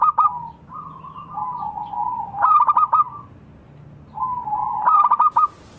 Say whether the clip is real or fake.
real